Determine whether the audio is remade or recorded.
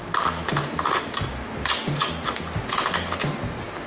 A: recorded